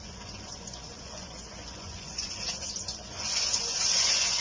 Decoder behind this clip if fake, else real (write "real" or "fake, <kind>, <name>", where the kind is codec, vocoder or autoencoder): fake, vocoder, Vocos